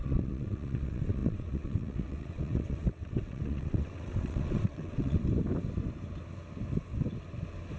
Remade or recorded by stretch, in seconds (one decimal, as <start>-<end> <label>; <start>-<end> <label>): 0.0-5.2 remade; 5.2-7.8 recorded